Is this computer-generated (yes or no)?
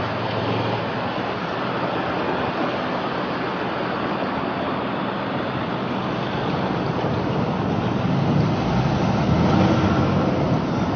no